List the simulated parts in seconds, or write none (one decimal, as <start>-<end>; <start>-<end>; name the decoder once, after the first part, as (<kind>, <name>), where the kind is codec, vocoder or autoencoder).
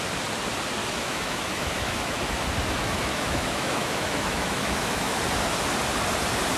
0.8-2.2 (autoencoder, DAC-VAE); 2.8-5.2